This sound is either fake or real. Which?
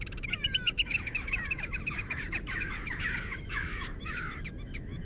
fake